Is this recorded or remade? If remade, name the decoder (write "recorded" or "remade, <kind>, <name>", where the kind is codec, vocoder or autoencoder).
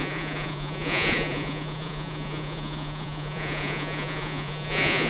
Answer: remade, vocoder, Vocos